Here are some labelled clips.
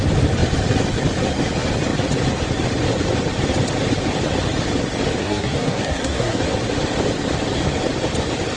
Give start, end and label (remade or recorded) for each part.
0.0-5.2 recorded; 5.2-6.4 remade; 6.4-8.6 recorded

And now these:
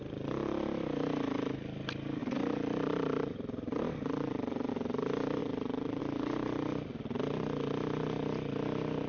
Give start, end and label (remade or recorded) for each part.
0.0-2.2 recorded; 2.2-4.7 remade; 4.7-5.4 recorded; 5.4-6.0 remade; 6.0-9.1 recorded

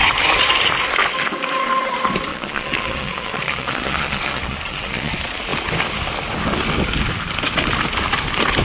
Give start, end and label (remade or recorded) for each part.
0.0-2.3 recorded; 2.3-5.1 remade; 5.1-8.6 recorded

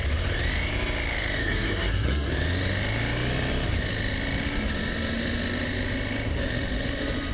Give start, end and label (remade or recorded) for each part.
0.0-1.4 recorded; 1.4-2.3 remade; 2.3-7.3 recorded